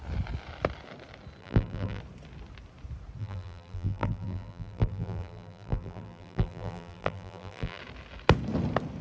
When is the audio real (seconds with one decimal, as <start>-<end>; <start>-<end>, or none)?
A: 0.0-1.4; 2.0-3.2; 7.8-9.0